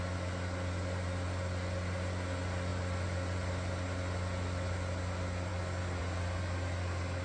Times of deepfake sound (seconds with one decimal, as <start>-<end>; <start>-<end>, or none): none